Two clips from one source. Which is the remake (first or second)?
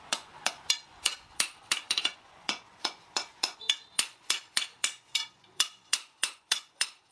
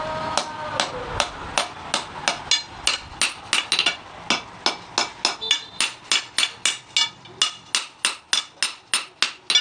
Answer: first